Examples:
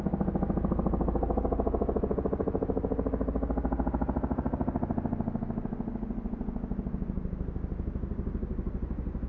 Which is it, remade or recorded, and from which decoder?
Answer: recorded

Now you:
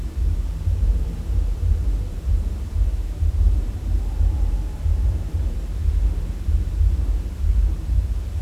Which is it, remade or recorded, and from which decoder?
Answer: remade, vocoder, BigVGAN v2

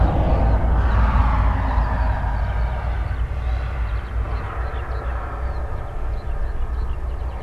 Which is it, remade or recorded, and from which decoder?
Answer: recorded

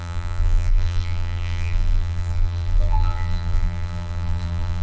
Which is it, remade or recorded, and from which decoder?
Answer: remade, vocoder, BigVGAN v2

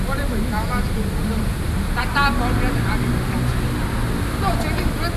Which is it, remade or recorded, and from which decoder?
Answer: recorded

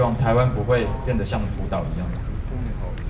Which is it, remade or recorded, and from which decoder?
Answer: recorded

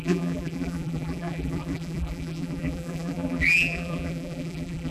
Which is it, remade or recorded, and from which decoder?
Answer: remade, vocoder, BigVGAN v2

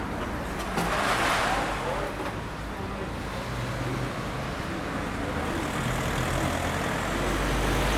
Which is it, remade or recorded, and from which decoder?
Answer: recorded